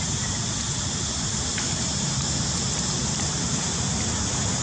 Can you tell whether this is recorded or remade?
recorded